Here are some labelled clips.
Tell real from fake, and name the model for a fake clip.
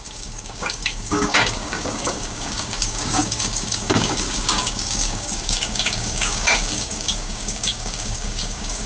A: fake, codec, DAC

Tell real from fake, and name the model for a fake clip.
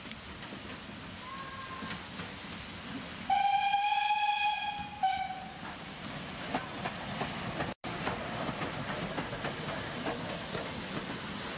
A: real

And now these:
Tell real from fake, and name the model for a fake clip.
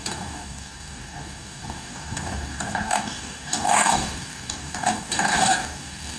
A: fake, codec, DAC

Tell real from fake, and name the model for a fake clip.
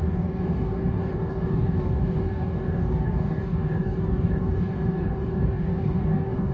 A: fake, codec, DAC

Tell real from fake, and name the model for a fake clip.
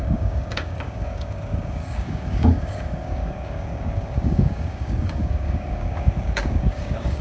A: fake, codec, DAC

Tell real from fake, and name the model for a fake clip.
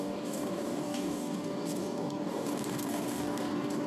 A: fake, codec, DAC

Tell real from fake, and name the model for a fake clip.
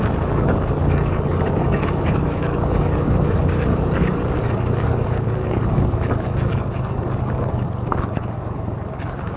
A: fake, codec, DAC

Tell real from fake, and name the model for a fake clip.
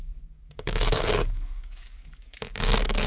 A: fake, codec, DAC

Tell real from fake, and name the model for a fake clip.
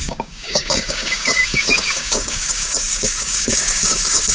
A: fake, codec, DAC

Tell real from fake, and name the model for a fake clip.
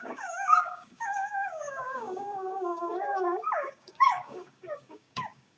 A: fake, codec, DAC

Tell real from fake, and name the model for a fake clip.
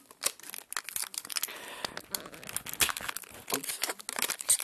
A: real